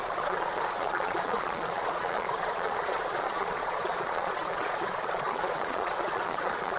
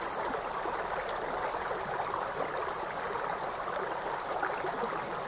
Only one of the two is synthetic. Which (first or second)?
first